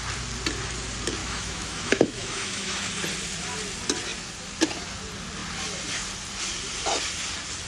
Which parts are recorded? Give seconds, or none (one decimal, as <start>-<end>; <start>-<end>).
0.0-1.2; 2.9-7.7